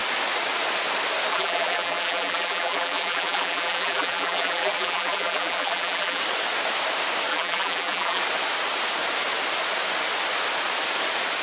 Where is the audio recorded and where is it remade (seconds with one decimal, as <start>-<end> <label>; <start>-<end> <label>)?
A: 0.0-1.3 recorded; 1.3-6.2 remade; 6.2-7.3 recorded; 7.3-8.2 remade; 8.2-11.4 recorded